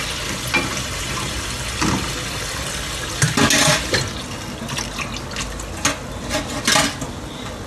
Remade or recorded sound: recorded